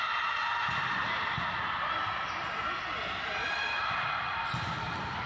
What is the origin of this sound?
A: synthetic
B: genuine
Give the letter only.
B